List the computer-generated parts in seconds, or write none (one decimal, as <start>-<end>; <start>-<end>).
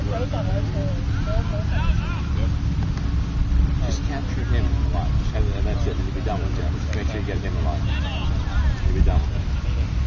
none